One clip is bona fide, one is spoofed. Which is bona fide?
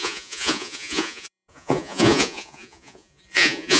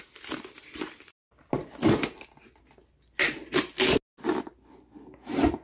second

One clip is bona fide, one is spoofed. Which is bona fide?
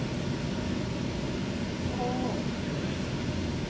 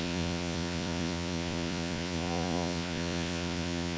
first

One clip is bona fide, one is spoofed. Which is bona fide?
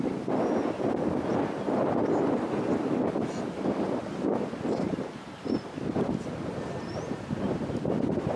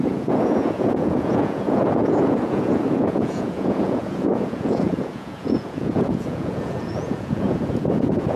first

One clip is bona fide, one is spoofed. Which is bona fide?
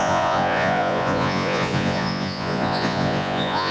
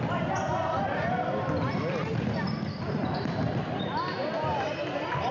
second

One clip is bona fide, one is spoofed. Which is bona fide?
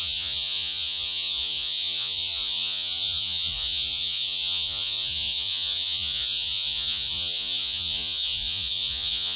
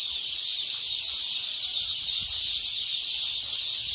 second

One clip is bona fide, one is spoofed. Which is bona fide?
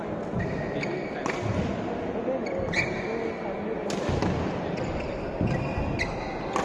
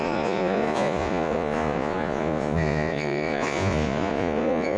first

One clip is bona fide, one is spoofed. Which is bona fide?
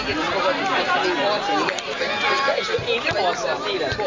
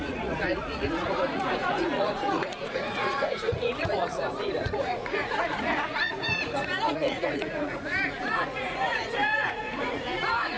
first